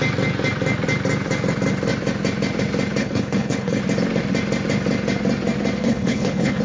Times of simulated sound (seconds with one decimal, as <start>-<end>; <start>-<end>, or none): 3.0-3.8; 5.8-6.6